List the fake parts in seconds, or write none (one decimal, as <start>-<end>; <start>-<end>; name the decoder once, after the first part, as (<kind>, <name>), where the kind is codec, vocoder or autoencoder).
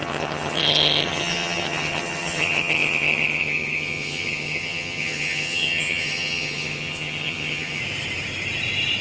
0.0-7.8 (vocoder, HiFi-GAN)